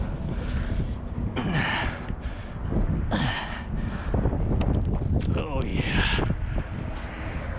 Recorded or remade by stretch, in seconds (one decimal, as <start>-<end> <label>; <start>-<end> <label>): 0.0-7.6 recorded